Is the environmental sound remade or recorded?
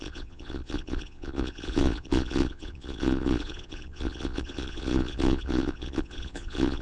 remade